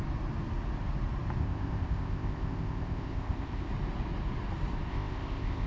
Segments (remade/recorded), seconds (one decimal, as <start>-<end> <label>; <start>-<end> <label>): 0.0-1.4 recorded; 1.4-3.7 remade; 3.7-4.9 recorded; 4.9-5.7 remade